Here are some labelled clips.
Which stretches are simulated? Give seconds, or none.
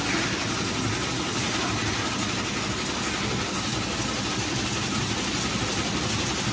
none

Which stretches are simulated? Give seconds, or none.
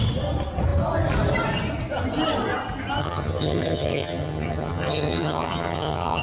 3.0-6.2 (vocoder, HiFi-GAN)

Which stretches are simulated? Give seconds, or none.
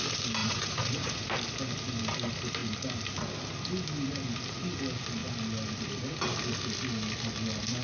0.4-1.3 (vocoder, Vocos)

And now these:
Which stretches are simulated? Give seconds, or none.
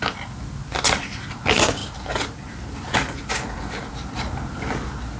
none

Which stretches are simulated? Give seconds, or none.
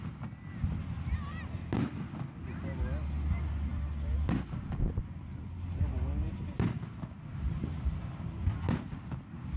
3.7-5.4 (vocoder, BigVGAN v2); 7.3-8.0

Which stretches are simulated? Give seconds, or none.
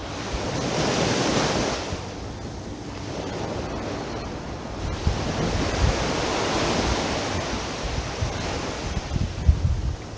none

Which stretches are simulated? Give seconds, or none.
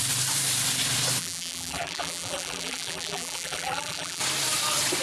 1.2-4.2 (vocoder, BigVGAN v2)